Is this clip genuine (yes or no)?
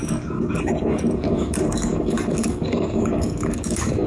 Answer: no